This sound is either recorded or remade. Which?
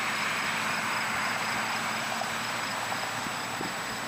recorded